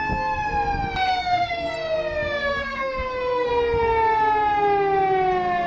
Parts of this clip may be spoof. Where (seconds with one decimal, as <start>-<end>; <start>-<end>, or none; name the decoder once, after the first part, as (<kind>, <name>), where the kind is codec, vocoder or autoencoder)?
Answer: 1.2-1.7 (codec, SNAC); 2.5-3.5